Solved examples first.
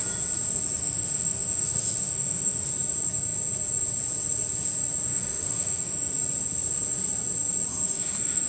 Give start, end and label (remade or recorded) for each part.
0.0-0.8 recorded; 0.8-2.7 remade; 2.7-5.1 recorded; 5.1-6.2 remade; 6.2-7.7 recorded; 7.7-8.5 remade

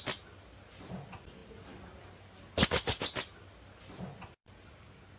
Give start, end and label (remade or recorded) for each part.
0.0-5.2 recorded

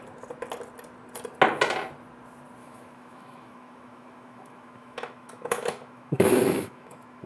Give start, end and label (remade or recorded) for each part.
0.0-2.6 recorded; 2.6-7.3 remade

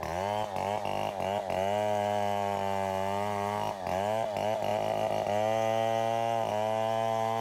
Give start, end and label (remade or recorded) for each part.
0.0-7.4 recorded

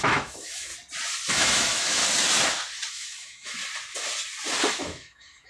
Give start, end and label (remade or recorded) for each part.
0.0-0.7 remade; 0.7-1.3 recorded; 1.3-2.0 remade; 2.0-2.9 recorded; 2.9-3.6 remade; 3.6-4.8 recorded; 4.8-5.5 remade

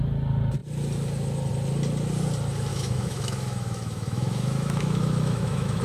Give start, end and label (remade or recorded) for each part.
0.0-2.7 recorded; 2.7-5.8 remade